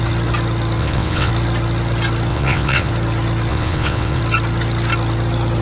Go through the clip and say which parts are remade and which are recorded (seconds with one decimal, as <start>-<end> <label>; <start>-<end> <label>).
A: 0.0-0.8 recorded; 0.8-1.3 remade; 1.3-2.3 recorded; 2.3-2.9 remade; 2.9-3.5 recorded; 3.5-4.2 remade; 4.2-5.6 recorded